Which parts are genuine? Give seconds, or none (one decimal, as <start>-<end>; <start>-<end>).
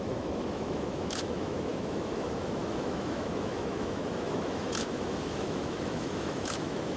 none